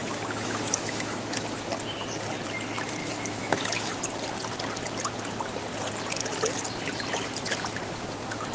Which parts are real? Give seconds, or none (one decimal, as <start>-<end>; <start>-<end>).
1.7-3.0; 3.9-8.5